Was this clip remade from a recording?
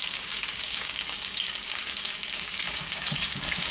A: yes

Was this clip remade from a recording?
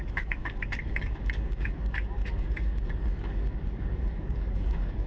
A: yes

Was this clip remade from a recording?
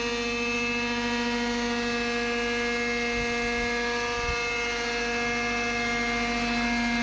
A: no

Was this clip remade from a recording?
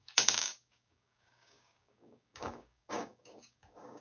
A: yes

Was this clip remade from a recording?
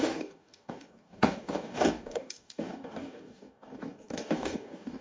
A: yes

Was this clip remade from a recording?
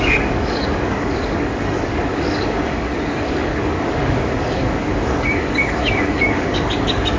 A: yes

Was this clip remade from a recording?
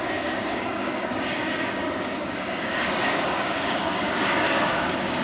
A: yes